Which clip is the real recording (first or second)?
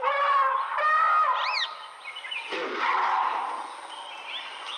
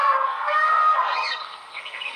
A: first